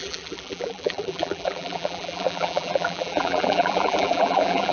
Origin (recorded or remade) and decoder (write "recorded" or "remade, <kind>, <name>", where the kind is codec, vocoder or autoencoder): remade, vocoder, BigVGAN v2